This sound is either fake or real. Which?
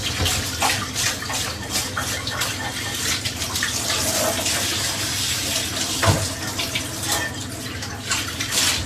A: real